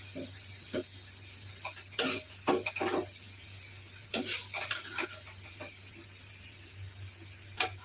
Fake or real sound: real